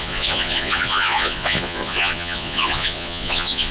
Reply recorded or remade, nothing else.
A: remade